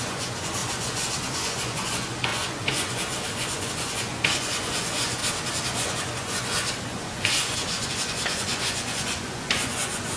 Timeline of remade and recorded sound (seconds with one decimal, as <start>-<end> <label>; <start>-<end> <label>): 0.0-5.2 remade; 5.2-5.7 recorded; 5.7-10.2 remade